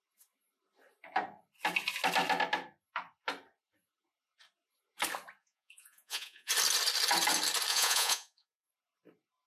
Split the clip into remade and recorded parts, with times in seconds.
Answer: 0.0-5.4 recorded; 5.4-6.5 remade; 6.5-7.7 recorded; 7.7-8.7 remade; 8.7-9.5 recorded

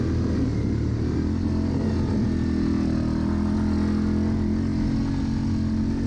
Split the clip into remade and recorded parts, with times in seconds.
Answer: 0.0-6.1 recorded